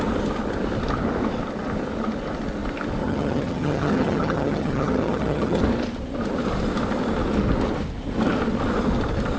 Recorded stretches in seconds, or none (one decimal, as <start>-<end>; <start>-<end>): 0.0-3.0; 5.6-9.4